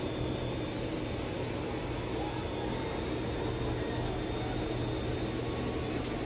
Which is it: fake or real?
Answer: real